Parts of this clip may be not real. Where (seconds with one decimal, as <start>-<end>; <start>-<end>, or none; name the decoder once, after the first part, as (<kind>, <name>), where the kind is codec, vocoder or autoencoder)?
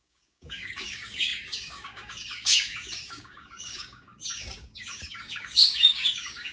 0.0-6.5 (codec, DAC)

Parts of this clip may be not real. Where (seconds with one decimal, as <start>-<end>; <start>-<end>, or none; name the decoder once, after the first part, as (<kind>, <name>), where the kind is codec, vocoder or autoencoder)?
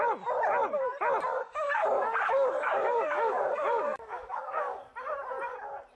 1.3-4.9 (codec, DAC)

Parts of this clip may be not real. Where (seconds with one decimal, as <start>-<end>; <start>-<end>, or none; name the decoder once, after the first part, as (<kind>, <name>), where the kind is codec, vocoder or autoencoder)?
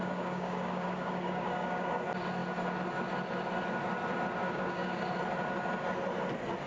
0.0-1.9 (codec, DAC); 4.4-5.0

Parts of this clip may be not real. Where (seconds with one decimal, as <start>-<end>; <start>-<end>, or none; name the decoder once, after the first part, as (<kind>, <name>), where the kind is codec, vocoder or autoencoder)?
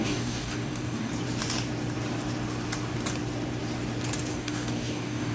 0.0-1.1 (codec, DAC); 4.3-5.3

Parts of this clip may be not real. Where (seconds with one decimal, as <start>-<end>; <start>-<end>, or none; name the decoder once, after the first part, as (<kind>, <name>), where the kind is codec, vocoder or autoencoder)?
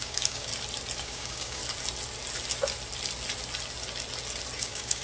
0.0-0.5 (codec, DAC); 1.0-1.6; 4.6-5.0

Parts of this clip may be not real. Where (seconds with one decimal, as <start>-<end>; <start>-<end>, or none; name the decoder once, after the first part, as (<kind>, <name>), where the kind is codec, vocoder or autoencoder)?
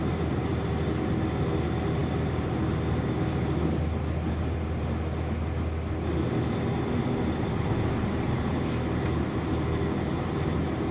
none